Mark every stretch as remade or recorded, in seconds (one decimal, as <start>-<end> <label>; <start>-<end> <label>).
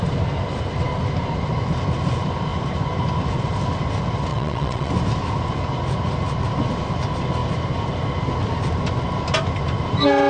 0.0-4.3 recorded; 4.3-4.9 remade; 4.9-10.3 recorded